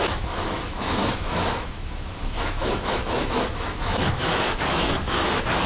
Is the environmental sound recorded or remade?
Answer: remade